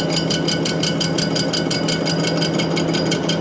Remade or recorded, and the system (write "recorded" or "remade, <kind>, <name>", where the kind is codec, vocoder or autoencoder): recorded